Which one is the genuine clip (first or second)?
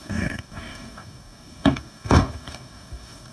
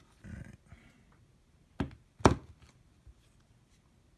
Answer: second